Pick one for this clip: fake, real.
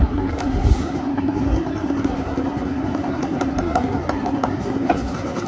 fake